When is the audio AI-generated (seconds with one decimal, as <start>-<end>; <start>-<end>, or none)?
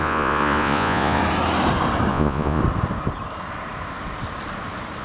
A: 0.0-1.2; 2.1-2.6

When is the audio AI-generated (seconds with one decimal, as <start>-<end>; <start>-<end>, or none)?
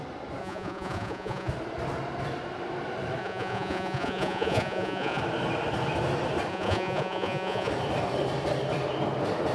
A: 0.4-1.5; 3.2-5.2; 6.5-7.7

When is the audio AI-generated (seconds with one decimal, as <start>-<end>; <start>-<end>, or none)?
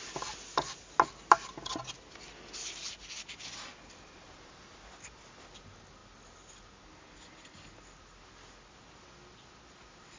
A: none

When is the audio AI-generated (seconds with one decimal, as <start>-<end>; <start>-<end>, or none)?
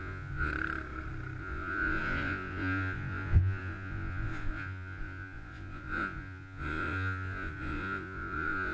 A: 0.0-0.5; 1.4-8.7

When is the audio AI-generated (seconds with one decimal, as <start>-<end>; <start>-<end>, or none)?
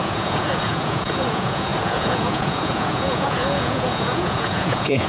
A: 0.0-5.1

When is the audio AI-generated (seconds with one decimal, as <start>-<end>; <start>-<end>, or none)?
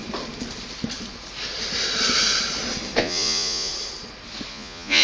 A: 3.0-3.7; 4.5-5.0